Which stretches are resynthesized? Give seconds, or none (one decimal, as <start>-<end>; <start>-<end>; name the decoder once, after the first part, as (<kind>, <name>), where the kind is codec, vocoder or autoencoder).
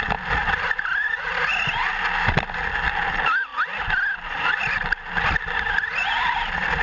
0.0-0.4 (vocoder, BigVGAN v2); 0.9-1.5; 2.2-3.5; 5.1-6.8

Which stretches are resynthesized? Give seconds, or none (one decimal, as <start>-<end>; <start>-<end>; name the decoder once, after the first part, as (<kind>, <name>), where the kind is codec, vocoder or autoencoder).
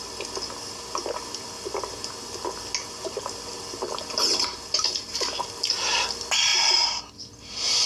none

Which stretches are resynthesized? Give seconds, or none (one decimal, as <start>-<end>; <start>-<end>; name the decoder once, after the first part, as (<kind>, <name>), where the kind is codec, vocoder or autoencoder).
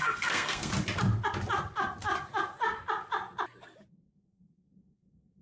0.0-0.7 (codec, SNAC); 3.9-5.4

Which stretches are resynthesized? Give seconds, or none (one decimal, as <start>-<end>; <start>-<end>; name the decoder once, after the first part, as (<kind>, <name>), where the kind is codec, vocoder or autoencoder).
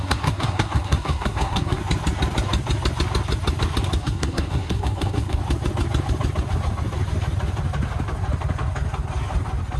0.0-1.8 (codec, SNAC); 4.0-5.4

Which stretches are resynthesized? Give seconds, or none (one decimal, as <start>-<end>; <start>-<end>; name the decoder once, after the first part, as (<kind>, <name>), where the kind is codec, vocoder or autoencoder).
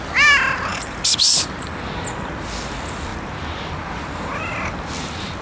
none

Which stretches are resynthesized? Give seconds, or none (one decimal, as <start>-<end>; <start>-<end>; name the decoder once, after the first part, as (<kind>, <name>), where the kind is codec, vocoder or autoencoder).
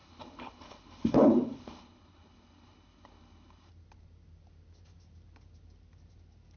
0.0-3.7 (codec, HILCodec)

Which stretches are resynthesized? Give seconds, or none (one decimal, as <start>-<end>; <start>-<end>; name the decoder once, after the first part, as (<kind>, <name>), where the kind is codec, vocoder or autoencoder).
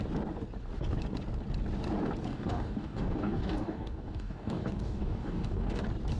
2.3-5.8 (codec, DAC)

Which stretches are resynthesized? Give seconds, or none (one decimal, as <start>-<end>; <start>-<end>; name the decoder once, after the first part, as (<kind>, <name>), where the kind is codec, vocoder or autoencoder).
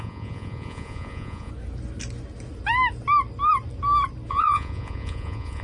0.0-1.5 (vocoder, Vocos); 4.3-5.6